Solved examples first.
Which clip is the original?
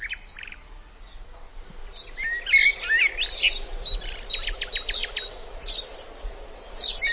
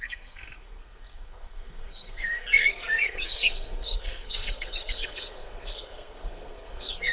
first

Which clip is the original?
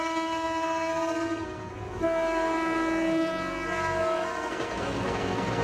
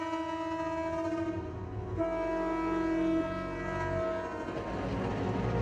second